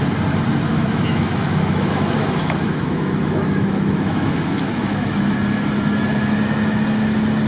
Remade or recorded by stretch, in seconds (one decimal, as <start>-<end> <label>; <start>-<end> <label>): 0.0-0.7 recorded; 0.7-5.2 remade; 5.2-7.5 recorded